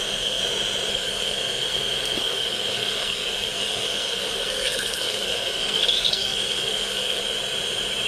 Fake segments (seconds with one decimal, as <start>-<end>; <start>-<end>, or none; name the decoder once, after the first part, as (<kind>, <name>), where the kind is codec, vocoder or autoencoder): 0.0-0.4 (codec, SNAC); 0.9-7.2